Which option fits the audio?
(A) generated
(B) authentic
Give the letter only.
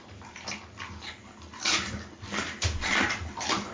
B